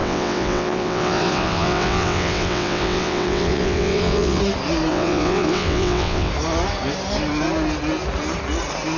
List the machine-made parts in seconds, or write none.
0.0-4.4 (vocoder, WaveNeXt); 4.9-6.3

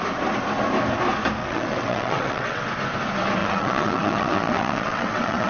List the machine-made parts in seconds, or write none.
1.4-2.7 (vocoder, WaveNeXt); 3.4-5.5

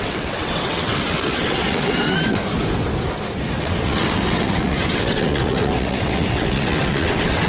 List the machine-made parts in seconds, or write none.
0.0-2.4 (vocoder, WaveNeXt); 3.6-7.5

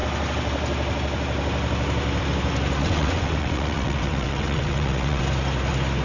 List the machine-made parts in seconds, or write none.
2.8-5.2 (vocoder, WaveNeXt)

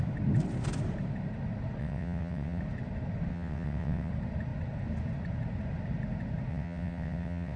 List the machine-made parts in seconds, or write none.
1.8-2.6 (vocoder, WaveNeXt); 3.3-4.1; 6.5-7.6

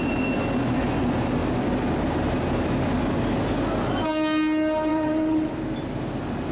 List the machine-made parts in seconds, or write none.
4.9-5.5 (vocoder, WaveNeXt)